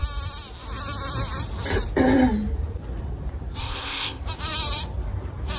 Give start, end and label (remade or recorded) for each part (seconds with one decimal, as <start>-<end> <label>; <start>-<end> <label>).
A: 0.0-3.6 recorded; 3.6-4.2 remade; 4.2-5.6 recorded